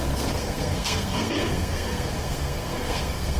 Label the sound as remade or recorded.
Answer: remade